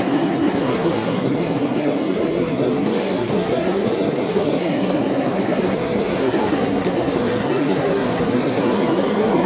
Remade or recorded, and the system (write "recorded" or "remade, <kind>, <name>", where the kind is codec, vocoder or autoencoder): remade, codec, SNAC